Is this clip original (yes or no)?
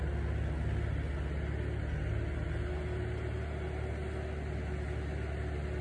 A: yes